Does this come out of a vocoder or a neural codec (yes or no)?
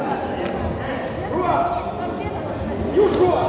no